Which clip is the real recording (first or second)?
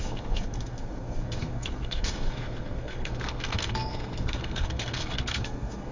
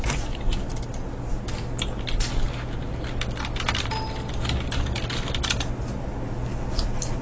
second